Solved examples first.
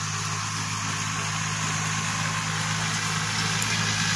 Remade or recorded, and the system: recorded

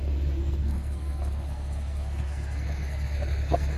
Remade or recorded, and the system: remade, codec, SNAC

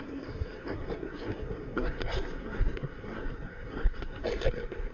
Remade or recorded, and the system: remade, codec, SNAC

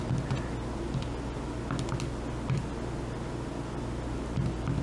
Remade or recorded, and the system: recorded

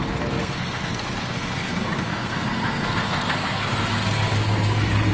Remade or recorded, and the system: remade, codec, SNAC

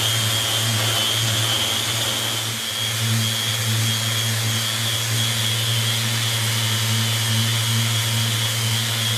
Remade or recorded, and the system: recorded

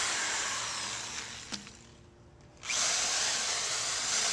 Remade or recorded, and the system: recorded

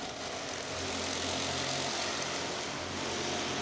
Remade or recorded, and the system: recorded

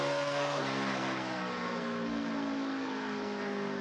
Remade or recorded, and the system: remade, codec, SNAC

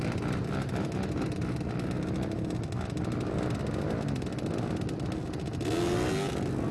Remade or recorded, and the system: recorded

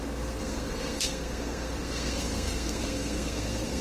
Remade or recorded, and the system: remade, codec, SNAC